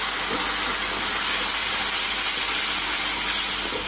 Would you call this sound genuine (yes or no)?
yes